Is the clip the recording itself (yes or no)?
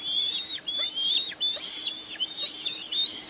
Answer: no